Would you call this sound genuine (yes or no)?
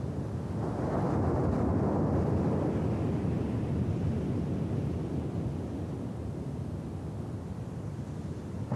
yes